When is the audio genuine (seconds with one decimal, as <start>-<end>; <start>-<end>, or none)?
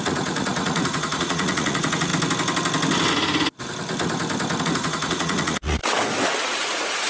2.1-4.6; 5.8-6.4